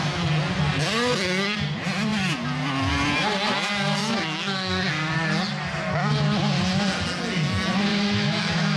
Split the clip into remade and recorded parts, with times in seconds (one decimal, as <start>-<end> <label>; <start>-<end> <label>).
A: 0.0-4.0 recorded; 4.0-4.8 remade; 4.8-7.9 recorded; 7.9-8.8 remade